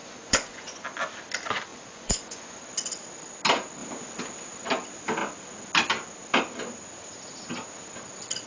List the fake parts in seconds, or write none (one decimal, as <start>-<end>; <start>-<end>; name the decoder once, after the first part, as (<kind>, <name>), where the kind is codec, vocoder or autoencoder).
0.0-0.8 (vocoder, Vocos); 1.7-2.6